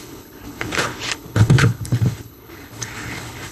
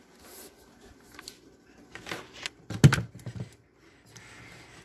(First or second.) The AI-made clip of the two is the first